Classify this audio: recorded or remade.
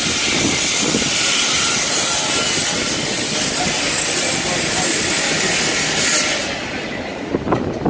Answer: recorded